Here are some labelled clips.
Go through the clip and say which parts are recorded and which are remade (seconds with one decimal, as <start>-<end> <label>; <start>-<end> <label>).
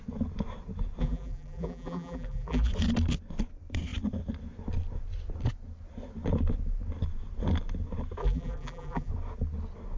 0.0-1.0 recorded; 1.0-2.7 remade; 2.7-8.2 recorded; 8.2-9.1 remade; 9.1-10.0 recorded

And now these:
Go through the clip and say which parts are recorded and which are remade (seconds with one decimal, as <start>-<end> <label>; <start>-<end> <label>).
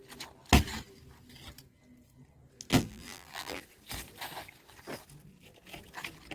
0.0-2.7 recorded; 2.7-3.6 remade; 3.6-6.3 recorded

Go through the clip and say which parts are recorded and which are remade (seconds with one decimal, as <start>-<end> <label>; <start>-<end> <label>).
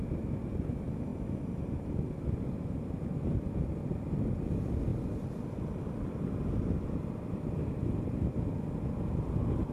0.0-9.7 recorded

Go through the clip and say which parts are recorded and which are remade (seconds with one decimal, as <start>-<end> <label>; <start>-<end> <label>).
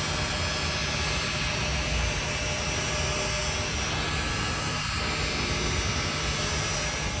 0.0-7.2 recorded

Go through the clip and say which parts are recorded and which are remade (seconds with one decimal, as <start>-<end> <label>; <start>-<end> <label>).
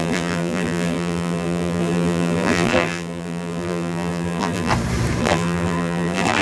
0.0-4.7 remade; 4.7-5.2 recorded; 5.2-6.4 remade